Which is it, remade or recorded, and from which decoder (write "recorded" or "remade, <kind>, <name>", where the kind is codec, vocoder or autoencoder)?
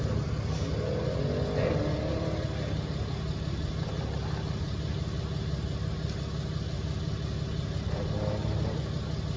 recorded